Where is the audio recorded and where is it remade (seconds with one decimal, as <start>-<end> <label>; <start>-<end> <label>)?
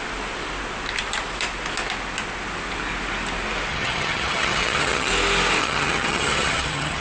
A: 0.0-3.7 recorded; 3.7-5.1 remade; 5.1-5.6 recorded; 5.6-7.0 remade